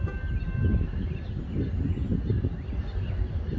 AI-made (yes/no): no